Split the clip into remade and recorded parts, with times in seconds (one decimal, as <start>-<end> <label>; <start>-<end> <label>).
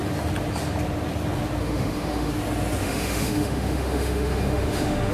0.0-1.6 recorded; 1.6-2.3 remade; 2.3-2.8 recorded; 2.8-5.1 remade